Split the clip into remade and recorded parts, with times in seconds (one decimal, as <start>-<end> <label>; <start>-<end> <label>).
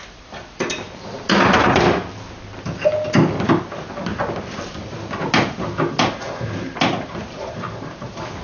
0.0-8.4 recorded